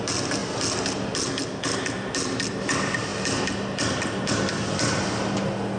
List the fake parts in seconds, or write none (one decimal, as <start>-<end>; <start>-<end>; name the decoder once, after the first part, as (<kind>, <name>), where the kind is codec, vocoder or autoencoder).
none